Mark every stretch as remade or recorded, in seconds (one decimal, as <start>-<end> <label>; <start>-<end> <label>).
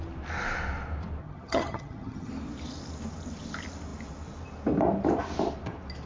0.0-1.2 recorded; 1.2-2.3 remade; 2.3-6.1 recorded